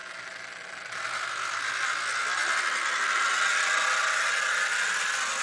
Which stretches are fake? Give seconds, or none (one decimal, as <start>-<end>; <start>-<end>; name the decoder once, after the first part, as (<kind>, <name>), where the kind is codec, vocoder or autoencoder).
none